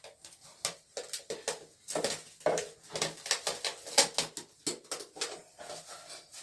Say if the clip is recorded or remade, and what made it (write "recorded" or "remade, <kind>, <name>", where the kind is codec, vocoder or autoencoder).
recorded